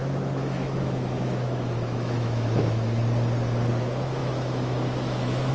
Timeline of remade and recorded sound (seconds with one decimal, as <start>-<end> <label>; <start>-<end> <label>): 0.0-3.0 remade; 3.0-3.7 recorded; 3.7-5.5 remade